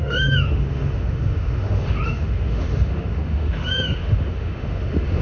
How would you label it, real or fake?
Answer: fake